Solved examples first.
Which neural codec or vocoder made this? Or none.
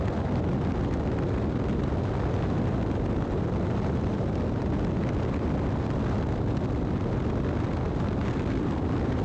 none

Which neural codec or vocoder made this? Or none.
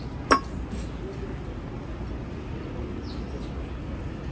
none